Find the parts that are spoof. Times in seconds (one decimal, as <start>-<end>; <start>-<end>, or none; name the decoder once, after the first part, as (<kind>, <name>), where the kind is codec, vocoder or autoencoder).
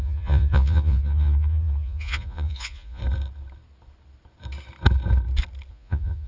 0.0-3.0 (vocoder, Vocos); 5.7-6.3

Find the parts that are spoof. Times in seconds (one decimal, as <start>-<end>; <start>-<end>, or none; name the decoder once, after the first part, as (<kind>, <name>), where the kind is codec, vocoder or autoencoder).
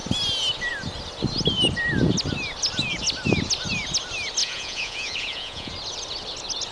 4.4-5.7 (vocoder, Vocos)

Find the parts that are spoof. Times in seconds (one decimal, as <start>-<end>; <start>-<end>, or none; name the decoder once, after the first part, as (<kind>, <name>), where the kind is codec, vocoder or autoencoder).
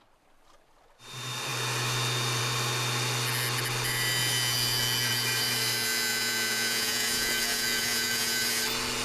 6.1-8.4 (vocoder, Vocos)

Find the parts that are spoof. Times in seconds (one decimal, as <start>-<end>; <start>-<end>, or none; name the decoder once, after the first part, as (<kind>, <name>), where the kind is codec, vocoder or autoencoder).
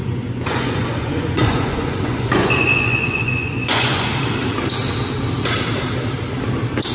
0.0-4.1 (vocoder, Vocos)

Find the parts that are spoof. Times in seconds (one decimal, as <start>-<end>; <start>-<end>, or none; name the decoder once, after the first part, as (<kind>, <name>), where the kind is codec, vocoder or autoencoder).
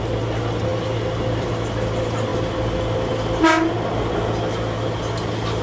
none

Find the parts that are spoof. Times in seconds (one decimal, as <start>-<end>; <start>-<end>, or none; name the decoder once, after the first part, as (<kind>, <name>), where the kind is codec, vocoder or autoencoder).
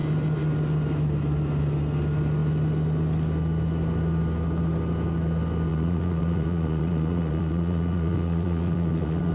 5.7-9.3 (vocoder, Vocos)